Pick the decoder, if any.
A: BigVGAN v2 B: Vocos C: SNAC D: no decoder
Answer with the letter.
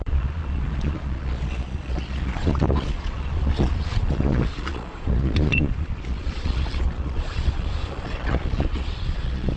B